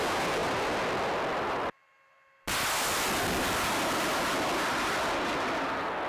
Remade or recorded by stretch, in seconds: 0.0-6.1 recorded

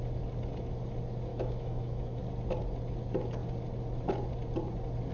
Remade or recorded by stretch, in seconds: 0.0-1.3 recorded; 1.3-2.2 remade; 2.2-5.1 recorded

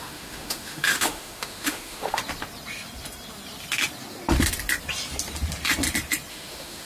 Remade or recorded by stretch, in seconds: 0.0-2.2 remade; 2.2-6.3 recorded; 6.3-6.9 remade

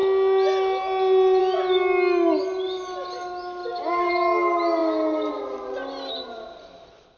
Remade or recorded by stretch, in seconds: 0.0-7.2 recorded

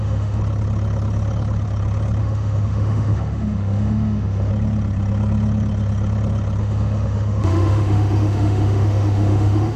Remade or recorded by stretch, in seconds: 0.0-0.4 remade; 0.4-2.2 recorded; 2.2-4.5 remade; 4.5-6.6 recorded; 6.6-9.8 remade